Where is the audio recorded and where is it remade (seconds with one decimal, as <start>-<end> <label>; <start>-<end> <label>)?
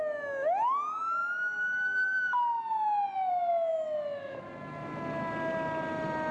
0.0-3.7 recorded; 3.7-4.5 remade; 4.5-6.3 recorded